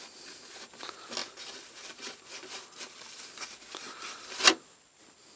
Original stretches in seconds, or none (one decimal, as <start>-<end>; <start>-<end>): 0.0-1.2; 2.6-5.4

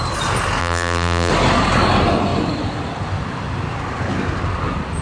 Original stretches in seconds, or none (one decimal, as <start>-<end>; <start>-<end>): 0.0-0.6; 1.3-5.0

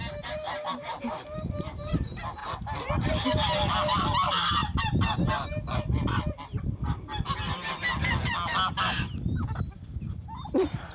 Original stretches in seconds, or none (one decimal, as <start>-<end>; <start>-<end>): 2.4-3.1; 7.9-9.7